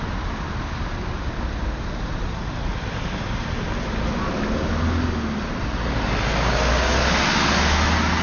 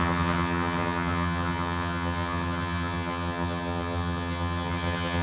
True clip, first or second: first